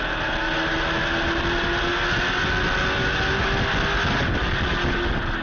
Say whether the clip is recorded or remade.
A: recorded